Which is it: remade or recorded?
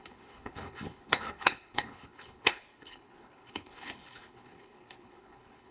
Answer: remade